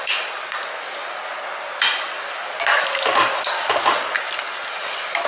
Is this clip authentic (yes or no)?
yes